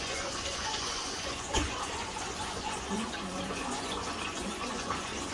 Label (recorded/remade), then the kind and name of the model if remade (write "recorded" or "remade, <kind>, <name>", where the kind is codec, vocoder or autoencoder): remade, vocoder, Vocos